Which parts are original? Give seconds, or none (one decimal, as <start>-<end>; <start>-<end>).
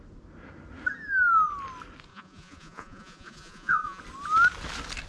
0.0-2.1; 4.0-5.1